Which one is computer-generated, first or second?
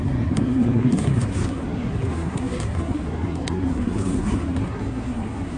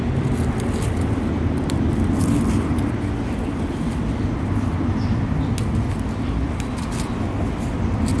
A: first